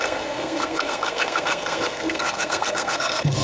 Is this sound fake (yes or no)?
yes